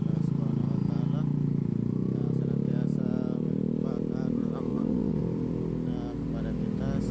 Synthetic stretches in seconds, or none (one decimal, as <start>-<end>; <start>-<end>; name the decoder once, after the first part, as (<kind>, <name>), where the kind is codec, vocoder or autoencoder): 4.7-5.2 (vocoder, Vocos)